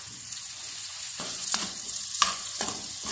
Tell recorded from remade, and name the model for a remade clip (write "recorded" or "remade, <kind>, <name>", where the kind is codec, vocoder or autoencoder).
remade, vocoder, Vocos